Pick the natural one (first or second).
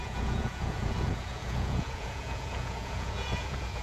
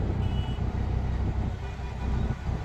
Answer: second